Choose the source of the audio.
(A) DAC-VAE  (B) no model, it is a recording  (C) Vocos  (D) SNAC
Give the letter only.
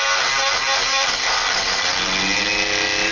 B